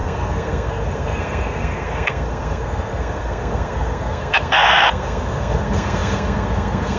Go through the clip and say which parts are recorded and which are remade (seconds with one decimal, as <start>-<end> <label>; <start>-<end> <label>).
0.0-7.0 remade